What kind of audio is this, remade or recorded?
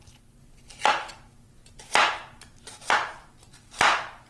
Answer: recorded